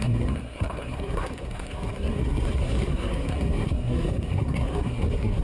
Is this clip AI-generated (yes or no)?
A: yes